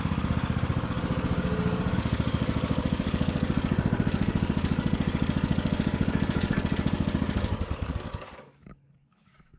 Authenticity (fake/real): fake